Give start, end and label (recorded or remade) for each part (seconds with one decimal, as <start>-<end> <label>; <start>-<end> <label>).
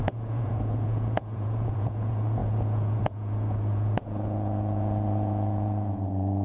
0.0-6.4 remade